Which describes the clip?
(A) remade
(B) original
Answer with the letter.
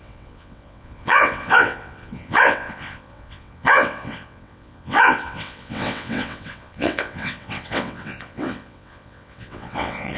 A